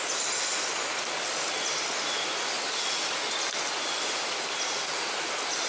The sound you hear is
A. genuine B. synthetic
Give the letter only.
A